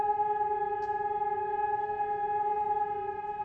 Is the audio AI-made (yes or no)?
no